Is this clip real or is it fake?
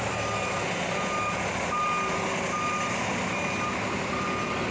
real